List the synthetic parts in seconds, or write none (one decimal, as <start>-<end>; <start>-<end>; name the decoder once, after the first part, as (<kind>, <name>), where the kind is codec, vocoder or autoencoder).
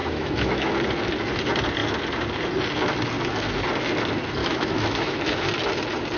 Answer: 0.0-0.7 (autoencoder, DAC-VAE); 4.4-5.4